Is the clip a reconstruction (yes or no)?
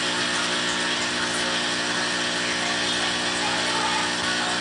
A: no